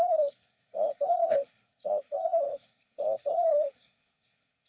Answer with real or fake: fake